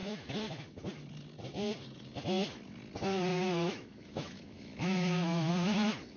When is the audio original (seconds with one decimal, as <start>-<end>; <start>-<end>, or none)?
0.5-3.3; 5.5-6.2